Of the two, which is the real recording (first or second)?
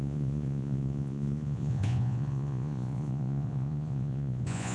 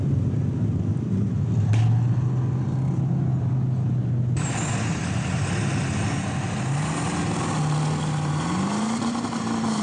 second